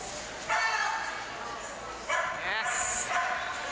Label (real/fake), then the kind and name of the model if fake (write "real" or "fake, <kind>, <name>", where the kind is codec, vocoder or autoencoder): real